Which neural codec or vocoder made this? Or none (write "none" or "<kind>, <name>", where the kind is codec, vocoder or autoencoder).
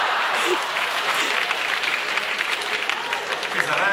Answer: vocoder, BigVGAN v2